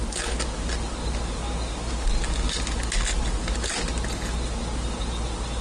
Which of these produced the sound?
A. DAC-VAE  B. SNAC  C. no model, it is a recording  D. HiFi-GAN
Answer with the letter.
C